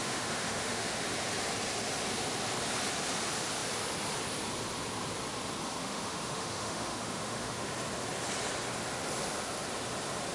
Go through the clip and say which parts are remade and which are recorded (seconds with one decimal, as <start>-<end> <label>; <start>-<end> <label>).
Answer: 0.0-1.0 remade; 1.0-5.8 recorded; 5.8-7.7 remade; 7.7-10.3 recorded